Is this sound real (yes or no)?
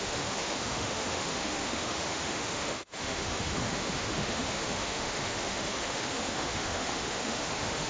no